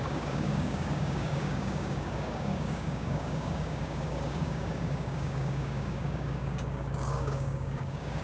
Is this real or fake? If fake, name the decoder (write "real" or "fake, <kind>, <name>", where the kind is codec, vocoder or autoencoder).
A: fake, codec, DAC